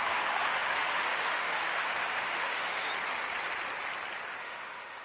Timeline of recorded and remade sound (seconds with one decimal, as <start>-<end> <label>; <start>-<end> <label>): 0.0-2.9 remade; 2.9-4.4 recorded; 4.4-5.0 remade